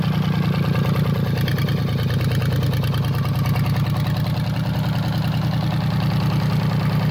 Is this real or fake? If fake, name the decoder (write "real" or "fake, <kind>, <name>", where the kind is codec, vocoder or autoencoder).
real